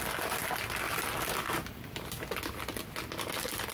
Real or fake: real